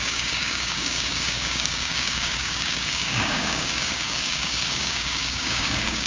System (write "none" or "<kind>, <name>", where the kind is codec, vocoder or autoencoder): codec, DAC